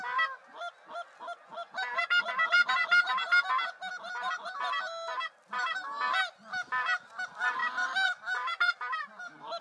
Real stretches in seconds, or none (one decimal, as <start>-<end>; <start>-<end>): 0.0-7.6; 9.0-9.6